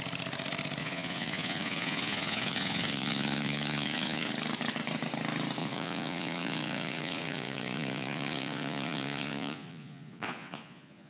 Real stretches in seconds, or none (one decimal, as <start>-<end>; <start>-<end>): 0.0-0.8; 4.3-5.6